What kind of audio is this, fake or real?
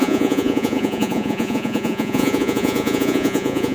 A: fake